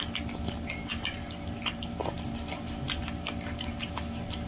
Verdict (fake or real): real